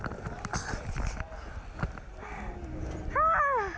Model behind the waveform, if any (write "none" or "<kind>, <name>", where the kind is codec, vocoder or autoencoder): none